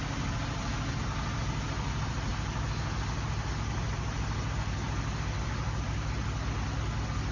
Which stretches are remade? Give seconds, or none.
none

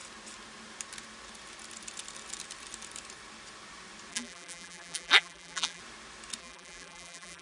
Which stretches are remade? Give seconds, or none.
4.1-5.8 (vocoder, BigVGAN v2); 6.4-7.4

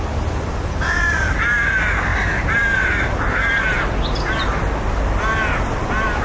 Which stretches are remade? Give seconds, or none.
2.1-3.6 (vocoder, BigVGAN v2)